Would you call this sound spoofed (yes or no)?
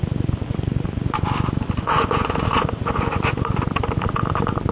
no